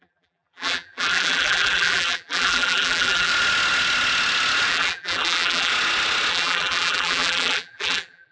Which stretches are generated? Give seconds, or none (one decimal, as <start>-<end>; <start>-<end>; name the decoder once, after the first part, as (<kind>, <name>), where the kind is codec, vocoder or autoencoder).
0.0-3.3 (vocoder, BigVGAN v2); 4.7-5.7; 6.3-8.3